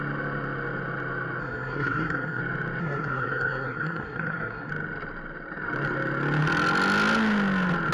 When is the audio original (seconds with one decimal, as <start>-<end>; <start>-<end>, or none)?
0.0-1.4; 2.4-2.8; 4.7-7.9